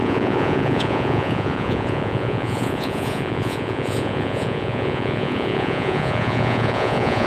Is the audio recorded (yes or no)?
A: no